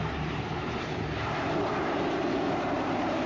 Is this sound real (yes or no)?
no